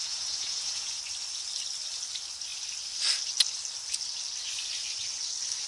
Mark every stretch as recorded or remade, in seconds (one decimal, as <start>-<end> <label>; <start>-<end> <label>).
0.0-1.0 remade; 1.0-5.7 recorded